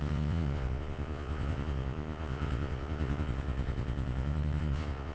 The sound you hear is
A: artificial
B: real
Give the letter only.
A